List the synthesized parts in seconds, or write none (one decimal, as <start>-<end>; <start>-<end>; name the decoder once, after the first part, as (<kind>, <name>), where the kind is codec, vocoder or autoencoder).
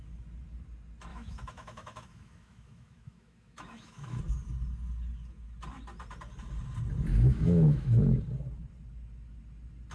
1.1-4.2 (autoencoder, DAC-VAE); 7.1-8.0